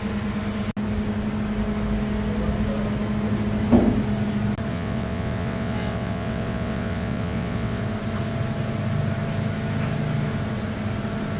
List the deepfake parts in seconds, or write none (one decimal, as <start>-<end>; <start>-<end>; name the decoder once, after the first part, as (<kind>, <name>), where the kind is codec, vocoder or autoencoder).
4.7-7.8 (vocoder, WaveNeXt)